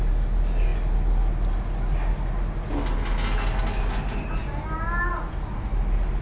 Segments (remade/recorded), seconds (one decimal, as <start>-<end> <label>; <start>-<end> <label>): 0.0-6.2 recorded